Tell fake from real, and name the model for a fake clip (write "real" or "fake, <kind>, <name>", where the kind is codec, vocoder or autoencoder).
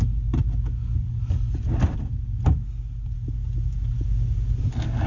real